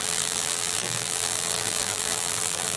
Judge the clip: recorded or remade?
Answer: remade